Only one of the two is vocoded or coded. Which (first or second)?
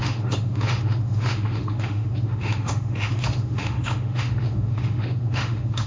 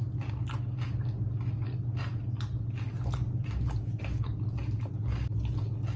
first